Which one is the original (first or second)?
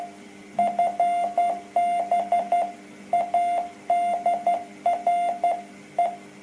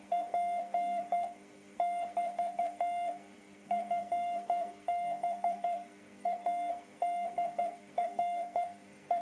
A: first